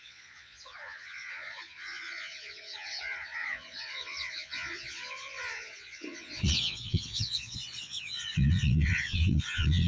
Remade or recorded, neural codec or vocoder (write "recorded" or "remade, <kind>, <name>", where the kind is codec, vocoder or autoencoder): remade, vocoder, Vocos